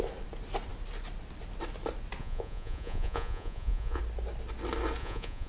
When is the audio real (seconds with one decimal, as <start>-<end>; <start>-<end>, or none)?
0.0-2.2; 4.0-5.0